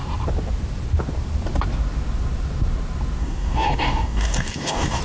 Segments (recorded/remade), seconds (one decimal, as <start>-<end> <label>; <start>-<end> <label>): 0.0-3.2 recorded; 3.2-5.0 remade